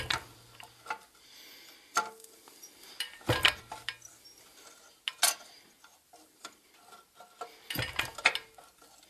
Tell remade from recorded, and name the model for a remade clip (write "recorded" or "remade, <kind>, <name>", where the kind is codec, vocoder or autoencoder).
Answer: recorded